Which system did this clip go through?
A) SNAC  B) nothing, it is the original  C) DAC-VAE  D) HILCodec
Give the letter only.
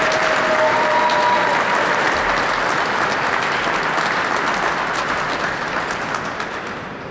B